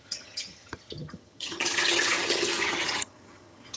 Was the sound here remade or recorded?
remade